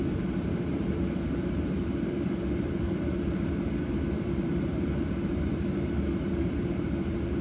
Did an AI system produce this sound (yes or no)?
yes